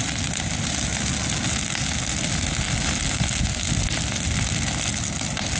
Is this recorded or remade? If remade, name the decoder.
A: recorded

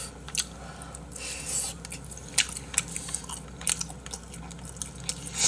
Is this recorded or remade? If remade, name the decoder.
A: recorded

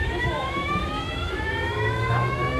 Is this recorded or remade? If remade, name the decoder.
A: remade, autoencoder, DAC-VAE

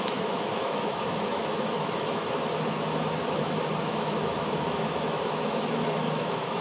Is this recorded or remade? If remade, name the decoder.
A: remade, autoencoder, DAC-VAE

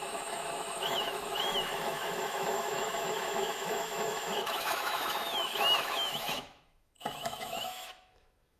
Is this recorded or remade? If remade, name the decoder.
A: remade, autoencoder, DAC-VAE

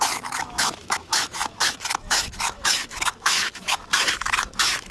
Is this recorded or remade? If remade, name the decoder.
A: remade, autoencoder, DAC-VAE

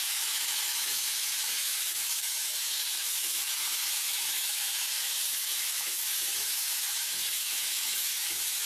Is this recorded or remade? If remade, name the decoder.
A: remade, autoencoder, DAC-VAE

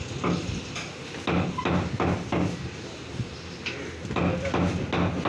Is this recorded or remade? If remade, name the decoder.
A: recorded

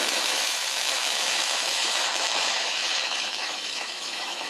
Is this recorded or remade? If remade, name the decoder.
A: remade, autoencoder, DAC-VAE